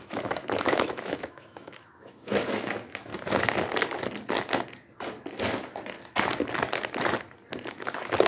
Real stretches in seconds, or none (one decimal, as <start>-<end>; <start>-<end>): 3.1-7.7